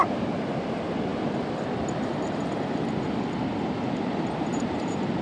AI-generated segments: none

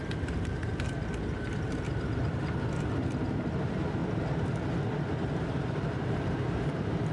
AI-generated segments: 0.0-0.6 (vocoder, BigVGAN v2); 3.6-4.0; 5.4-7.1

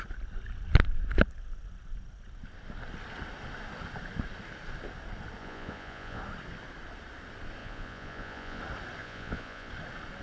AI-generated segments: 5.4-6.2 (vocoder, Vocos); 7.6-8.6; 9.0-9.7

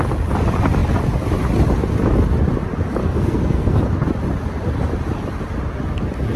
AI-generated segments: 3.0-3.8 (codec, SNAC)

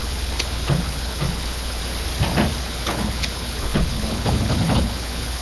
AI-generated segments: 0.0-1.8 (codec, HILCodec); 2.6-5.4